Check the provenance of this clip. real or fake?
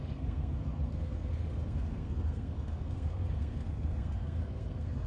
fake